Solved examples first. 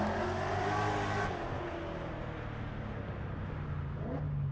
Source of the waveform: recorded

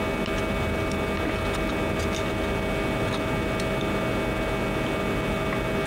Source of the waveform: recorded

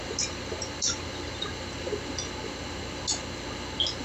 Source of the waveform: recorded